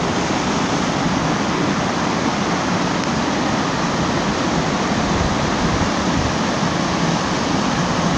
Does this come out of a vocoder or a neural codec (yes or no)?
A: no